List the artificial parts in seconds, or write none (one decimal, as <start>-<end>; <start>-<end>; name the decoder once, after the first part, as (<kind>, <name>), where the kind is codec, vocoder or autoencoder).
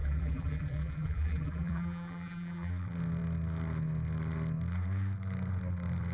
0.0-2.7 (vocoder, BigVGAN v2)